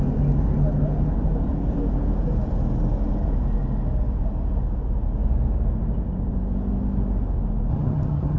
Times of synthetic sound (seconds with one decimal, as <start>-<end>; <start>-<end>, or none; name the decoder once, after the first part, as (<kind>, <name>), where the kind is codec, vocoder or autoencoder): 7.7-8.4 (vocoder, HiFi-GAN)